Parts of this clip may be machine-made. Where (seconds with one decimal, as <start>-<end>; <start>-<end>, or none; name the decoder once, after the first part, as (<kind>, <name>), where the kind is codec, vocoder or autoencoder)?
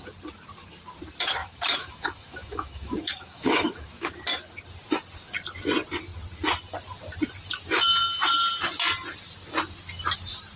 1.4-4.2 (autoencoder, DAC-VAE)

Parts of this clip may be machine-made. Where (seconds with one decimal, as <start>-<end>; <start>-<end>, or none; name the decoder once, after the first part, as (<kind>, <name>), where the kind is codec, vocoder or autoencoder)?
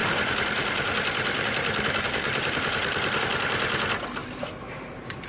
0.0-3.2 (vocoder, BigVGAN v2); 4.2-5.3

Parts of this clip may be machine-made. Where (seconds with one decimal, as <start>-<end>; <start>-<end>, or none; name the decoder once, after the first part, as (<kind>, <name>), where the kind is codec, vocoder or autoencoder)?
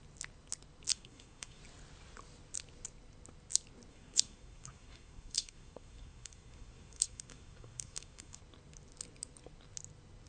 0.9-1.6 (codec, SNAC); 3.9-8.4